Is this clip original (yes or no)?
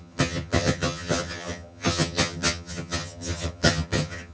no